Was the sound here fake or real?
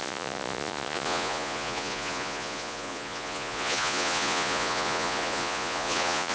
fake